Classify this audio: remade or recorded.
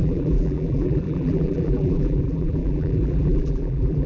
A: remade